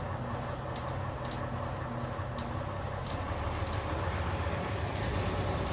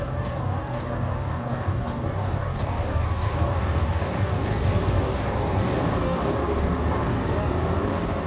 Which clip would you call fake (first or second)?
second